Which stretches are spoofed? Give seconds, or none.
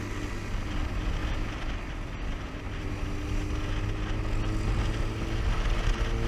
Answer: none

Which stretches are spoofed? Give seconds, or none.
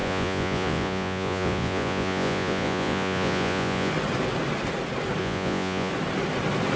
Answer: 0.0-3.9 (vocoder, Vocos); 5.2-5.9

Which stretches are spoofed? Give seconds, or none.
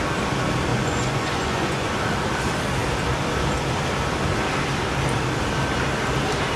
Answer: 0.7-2.0 (vocoder, Vocos)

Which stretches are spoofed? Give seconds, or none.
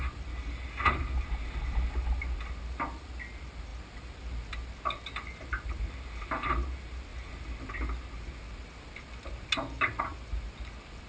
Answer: none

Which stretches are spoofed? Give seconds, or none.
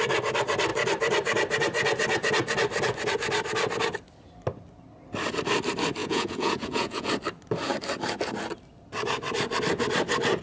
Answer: 6.0-7.1 (vocoder, Vocos)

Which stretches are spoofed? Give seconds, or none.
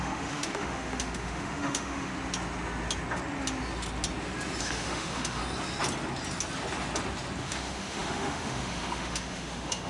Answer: 0.0-2.1 (autoencoder, DAC-VAE); 4.6-5.4; 7.4-9.9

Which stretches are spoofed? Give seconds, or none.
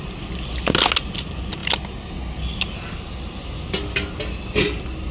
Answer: none